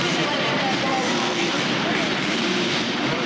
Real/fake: fake